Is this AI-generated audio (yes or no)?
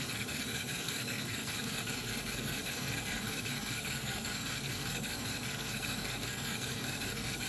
yes